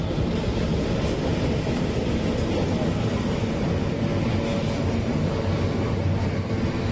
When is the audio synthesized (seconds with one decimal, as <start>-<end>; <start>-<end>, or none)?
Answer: none